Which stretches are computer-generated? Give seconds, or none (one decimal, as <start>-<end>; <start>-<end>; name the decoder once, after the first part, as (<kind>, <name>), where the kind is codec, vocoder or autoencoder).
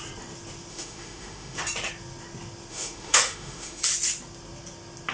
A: 0.7-1.6 (autoencoder, DAC-VAE); 2.7-3.8